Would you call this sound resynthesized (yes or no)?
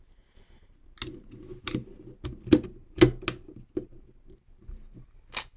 no